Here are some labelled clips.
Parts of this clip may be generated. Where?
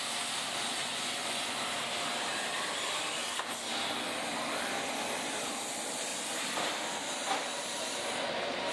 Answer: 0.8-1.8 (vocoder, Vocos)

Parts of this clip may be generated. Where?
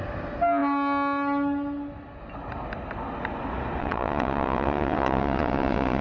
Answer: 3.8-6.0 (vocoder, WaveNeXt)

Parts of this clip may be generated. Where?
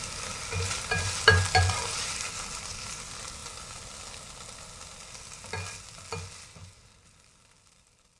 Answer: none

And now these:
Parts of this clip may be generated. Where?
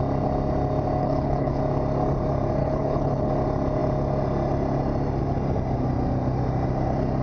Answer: 1.0-1.6 (codec, HILCodec); 2.6-3.3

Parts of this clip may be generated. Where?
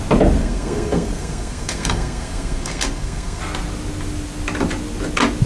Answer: 0.4-3.4 (codec, SNAC)